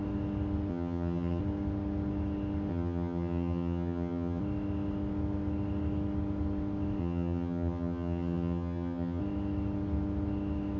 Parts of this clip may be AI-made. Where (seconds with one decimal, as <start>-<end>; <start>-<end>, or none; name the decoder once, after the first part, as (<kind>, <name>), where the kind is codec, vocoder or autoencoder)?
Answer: 0.7-1.4 (vocoder, HiFi-GAN); 2.7-4.4; 7.0-9.2